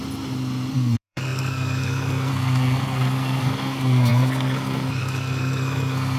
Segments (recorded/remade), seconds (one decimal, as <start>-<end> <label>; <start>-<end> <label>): 0.0-0.7 recorded; 0.7-6.2 remade